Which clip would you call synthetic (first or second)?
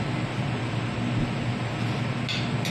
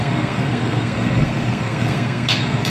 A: second